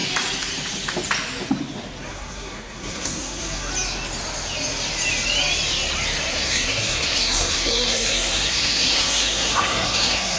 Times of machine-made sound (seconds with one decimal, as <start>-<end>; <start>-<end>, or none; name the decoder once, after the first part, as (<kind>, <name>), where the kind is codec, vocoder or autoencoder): 2.1-3.7 (codec, SNAC); 6.3-10.4